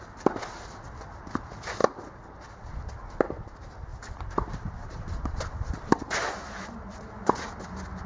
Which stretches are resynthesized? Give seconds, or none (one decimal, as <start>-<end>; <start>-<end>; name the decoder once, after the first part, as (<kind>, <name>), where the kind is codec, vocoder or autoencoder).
3.9-6.1 (vocoder, BigVGAN v2)